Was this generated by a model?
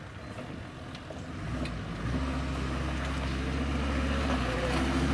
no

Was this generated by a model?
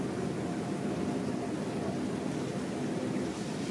no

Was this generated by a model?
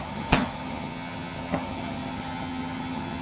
yes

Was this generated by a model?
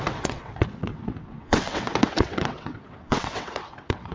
yes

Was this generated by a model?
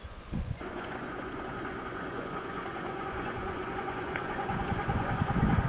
yes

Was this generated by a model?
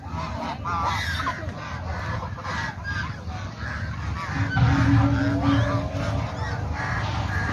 no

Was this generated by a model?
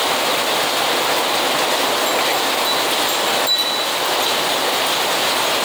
no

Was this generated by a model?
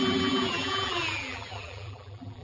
yes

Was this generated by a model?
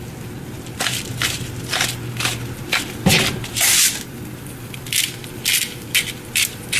no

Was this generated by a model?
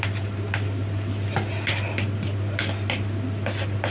no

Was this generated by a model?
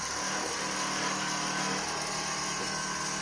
no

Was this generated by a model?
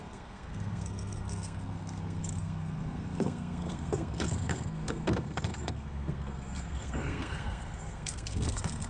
yes